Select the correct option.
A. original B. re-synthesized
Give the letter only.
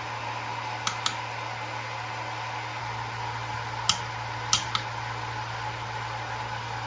A